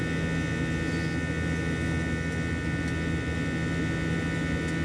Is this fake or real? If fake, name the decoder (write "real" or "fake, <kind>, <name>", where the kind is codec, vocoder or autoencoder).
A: real